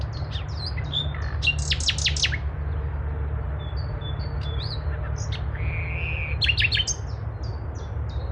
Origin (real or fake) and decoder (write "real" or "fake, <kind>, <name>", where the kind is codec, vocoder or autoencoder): real